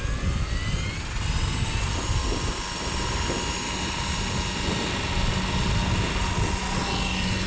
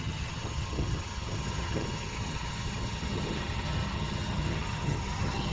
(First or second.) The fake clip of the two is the second